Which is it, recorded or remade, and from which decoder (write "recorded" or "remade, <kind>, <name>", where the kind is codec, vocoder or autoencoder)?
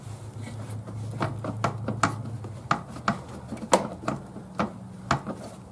recorded